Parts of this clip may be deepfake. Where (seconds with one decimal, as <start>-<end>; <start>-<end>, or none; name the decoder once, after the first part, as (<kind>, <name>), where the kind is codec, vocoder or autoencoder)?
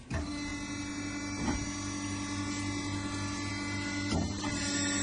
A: none